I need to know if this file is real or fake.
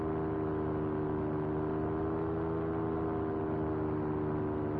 real